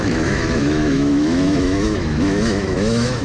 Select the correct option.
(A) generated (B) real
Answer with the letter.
A